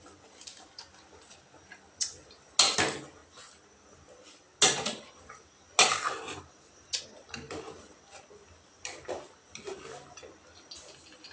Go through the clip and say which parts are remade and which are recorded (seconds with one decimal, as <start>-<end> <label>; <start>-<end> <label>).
0.0-11.3 recorded